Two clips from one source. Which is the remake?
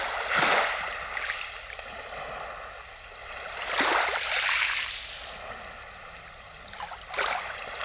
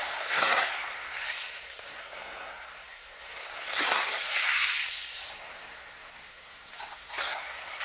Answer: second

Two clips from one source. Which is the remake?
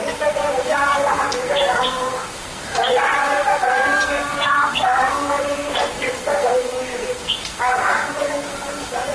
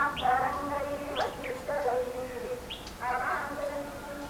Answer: first